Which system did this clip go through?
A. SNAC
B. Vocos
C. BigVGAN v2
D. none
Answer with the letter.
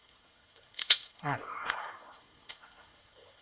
A